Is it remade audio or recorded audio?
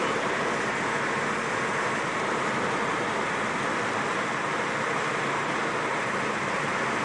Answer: recorded